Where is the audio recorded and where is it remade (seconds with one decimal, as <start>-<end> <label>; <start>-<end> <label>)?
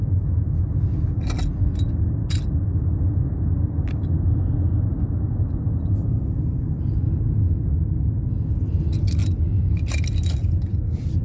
0.0-11.2 recorded